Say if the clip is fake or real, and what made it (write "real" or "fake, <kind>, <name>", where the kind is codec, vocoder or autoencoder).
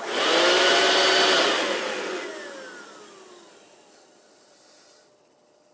real